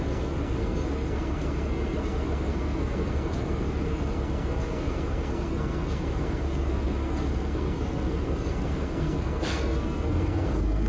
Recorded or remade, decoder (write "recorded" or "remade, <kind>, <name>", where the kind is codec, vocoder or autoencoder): remade, codec, SNAC